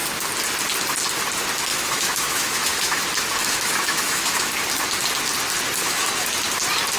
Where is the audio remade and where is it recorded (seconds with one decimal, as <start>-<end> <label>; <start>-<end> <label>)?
0.0-1.7 recorded; 1.7-3.0 remade; 3.0-3.4 recorded; 3.4-4.5 remade; 4.5-5.8 recorded; 5.8-6.3 remade; 6.3-7.0 recorded